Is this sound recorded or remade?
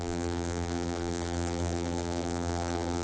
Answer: remade